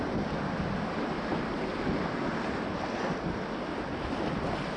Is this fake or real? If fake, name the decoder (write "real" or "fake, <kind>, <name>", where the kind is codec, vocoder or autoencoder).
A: real